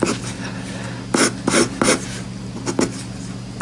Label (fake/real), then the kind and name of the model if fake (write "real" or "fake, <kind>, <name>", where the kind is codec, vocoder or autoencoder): real